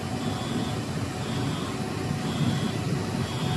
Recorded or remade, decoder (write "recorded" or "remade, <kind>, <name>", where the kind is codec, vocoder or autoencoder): recorded